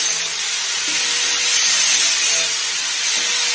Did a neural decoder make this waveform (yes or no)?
no